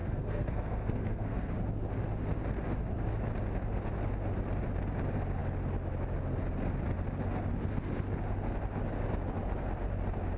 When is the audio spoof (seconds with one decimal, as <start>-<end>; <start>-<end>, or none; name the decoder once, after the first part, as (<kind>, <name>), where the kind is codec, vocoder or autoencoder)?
0.0-1.5 (codec, SNAC)